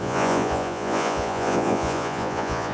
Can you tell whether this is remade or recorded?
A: remade